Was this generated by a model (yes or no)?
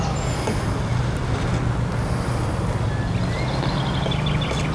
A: no